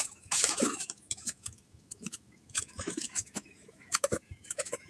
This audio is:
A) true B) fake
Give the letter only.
B